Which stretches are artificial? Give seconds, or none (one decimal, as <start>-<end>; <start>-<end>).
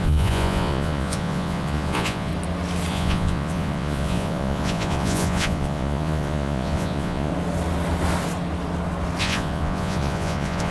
0.0-2.3; 2.9-7.3; 9.2-10.7